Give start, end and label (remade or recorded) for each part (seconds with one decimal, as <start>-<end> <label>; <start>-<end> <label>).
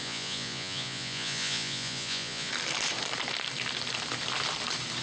0.0-2.5 remade; 2.5-5.0 recorded